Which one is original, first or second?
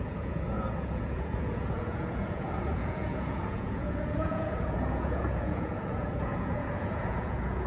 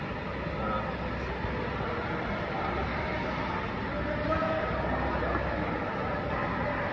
second